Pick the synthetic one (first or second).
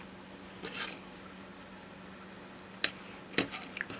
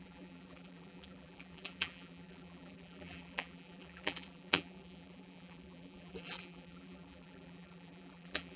second